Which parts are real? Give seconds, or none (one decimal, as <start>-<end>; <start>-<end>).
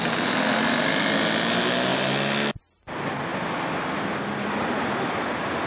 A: 0.0-5.7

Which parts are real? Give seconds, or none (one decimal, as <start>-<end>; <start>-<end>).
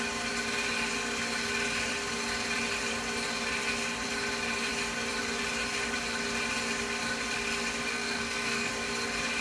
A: 0.0-7.9; 8.7-9.4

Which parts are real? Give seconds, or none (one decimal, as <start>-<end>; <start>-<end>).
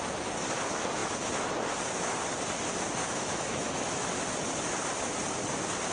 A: 0.0-3.0; 4.2-5.9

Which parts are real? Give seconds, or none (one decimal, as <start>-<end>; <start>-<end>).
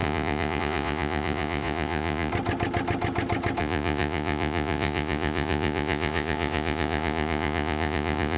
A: 2.3-3.6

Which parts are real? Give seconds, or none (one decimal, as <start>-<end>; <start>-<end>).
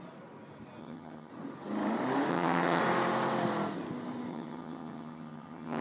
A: 0.0-0.8; 1.3-2.3; 2.8-4.3